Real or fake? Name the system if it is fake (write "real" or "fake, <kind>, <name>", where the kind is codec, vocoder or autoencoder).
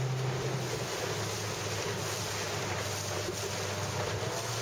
real